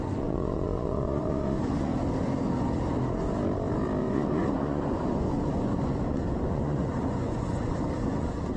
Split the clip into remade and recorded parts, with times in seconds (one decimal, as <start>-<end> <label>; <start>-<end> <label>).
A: 0.0-1.9 remade; 1.9-4.0 recorded; 4.0-8.6 remade